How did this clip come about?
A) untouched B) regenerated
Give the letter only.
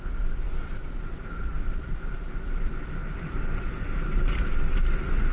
A